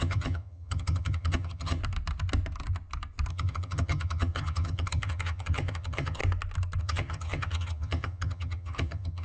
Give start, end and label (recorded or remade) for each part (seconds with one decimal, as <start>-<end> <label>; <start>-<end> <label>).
0.0-1.8 remade; 1.8-3.3 recorded; 3.3-6.2 remade; 6.2-6.8 recorded; 6.8-9.2 remade